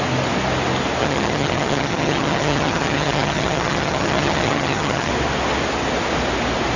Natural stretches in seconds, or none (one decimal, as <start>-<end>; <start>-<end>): 0.0-1.0; 5.1-6.8